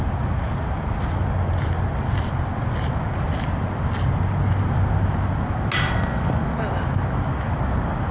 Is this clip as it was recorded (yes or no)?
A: yes